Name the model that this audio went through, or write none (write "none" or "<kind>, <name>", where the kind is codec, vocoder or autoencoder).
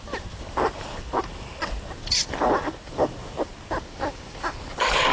none